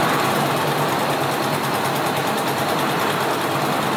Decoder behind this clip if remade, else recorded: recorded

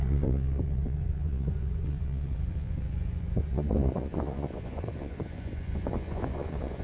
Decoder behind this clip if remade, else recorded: remade, vocoder, Vocos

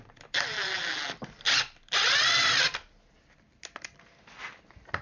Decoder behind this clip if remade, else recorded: recorded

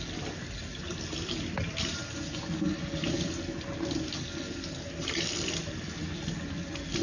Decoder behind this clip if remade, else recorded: recorded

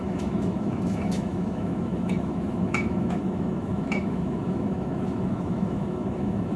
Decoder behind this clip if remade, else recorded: remade, autoencoder, DAC-VAE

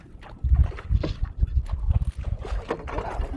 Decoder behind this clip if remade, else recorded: recorded